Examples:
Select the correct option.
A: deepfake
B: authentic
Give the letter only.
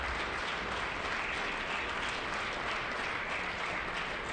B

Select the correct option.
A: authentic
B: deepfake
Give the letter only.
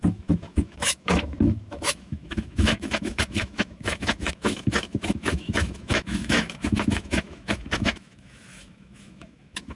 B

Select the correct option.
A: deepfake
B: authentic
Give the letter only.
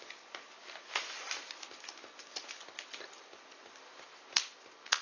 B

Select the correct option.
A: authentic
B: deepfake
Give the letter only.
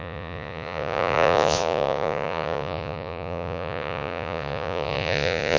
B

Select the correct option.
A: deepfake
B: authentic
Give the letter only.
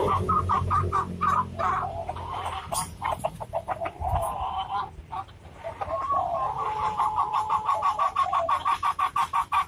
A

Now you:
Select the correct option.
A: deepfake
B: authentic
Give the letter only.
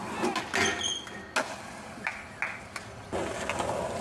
B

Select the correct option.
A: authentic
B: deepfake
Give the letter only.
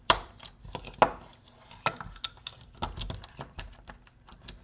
A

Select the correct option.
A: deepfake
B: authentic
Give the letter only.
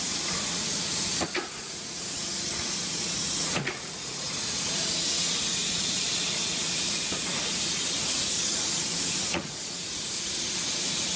A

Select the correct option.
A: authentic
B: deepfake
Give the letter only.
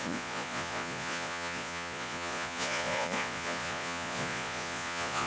B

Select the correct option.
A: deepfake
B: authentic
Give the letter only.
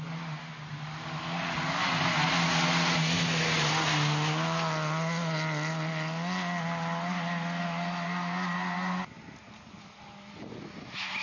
B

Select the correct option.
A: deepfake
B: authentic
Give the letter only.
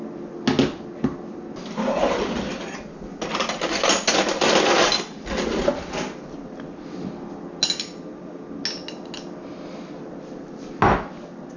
B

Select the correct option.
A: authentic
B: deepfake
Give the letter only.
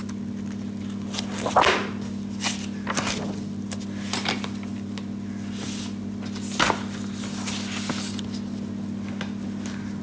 A